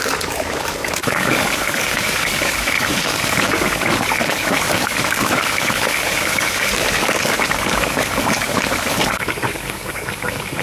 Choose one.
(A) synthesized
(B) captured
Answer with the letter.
A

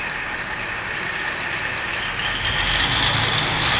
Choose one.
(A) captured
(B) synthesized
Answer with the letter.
A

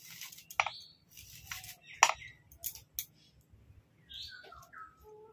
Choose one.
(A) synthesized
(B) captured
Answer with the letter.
B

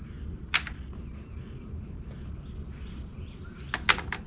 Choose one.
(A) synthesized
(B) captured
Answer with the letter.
B